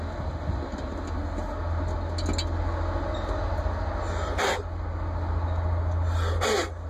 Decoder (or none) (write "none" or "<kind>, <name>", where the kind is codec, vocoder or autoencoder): none